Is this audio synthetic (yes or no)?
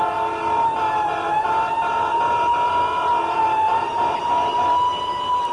no